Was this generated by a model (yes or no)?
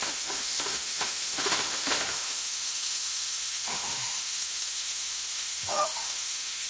yes